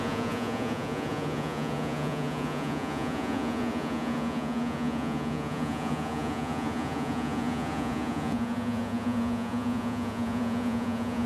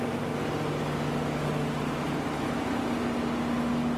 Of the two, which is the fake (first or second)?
first